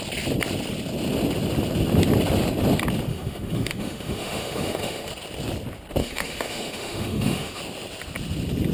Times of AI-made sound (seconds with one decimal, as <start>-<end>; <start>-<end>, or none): 3.1-5.1; 6.0-7.6